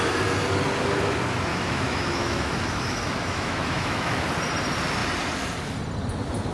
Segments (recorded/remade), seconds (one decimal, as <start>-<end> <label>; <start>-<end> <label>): 0.0-1.5 recorded; 1.5-4.2 remade; 4.2-6.5 recorded